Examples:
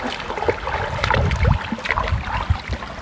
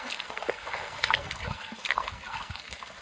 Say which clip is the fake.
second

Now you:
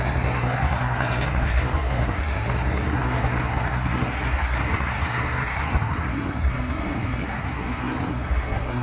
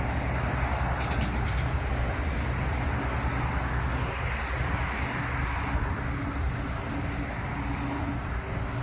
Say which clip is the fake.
first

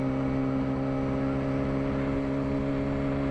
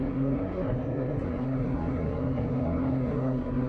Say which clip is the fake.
second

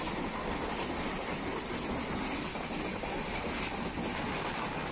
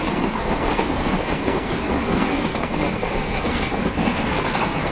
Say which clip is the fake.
second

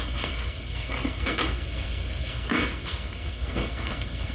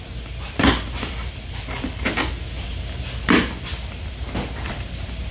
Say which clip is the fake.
first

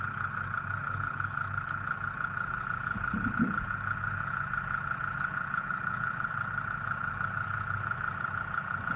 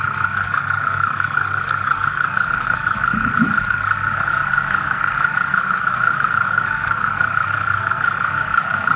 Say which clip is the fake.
second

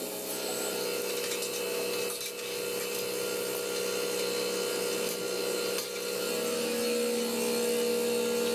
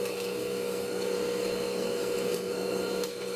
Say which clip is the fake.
second